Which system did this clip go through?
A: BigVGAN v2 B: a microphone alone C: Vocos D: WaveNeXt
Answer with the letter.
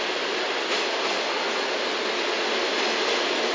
B